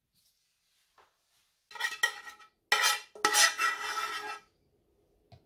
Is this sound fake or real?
real